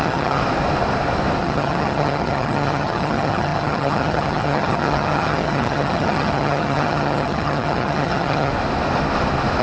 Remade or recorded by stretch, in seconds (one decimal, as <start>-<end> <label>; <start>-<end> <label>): 0.0-0.4 remade; 0.4-1.4 recorded; 1.4-8.5 remade; 8.5-9.6 recorded